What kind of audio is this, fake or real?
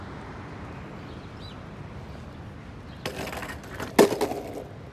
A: real